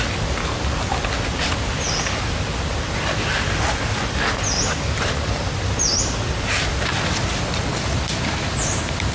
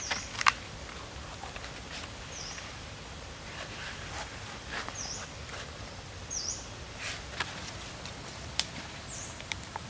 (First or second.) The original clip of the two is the first